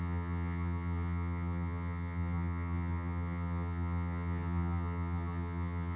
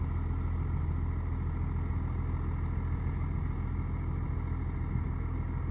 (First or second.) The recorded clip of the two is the second